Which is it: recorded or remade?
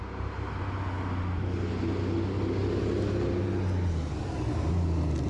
recorded